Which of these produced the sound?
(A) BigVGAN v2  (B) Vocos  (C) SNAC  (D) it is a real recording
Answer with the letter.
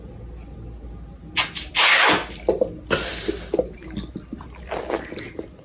D